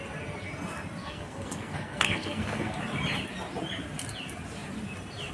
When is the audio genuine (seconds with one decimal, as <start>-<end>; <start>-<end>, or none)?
0.0-1.0; 2.8-5.3